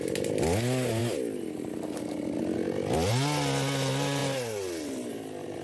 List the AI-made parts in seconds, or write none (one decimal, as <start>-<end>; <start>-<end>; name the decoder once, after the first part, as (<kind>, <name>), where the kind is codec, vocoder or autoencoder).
none

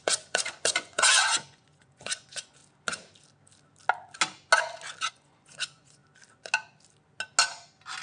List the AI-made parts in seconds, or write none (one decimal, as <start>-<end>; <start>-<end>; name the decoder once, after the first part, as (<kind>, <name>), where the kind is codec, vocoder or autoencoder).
0.0-2.6 (vocoder, Vocos); 5.1-6.0

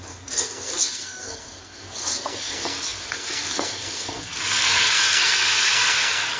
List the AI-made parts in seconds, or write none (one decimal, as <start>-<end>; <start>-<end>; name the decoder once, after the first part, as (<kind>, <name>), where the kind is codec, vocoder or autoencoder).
0.0-6.4 (codec, SNAC)